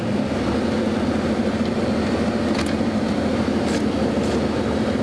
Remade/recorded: recorded